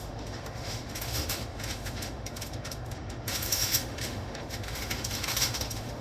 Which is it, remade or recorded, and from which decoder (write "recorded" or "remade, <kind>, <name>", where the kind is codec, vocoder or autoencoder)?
remade, autoencoder, DAC-VAE